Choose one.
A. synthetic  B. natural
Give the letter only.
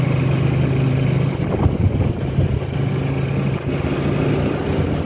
B